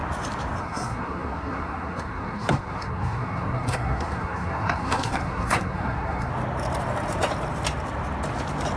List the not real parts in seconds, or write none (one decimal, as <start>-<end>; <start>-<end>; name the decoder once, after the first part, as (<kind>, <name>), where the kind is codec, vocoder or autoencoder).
0.6-6.3 (codec, SNAC)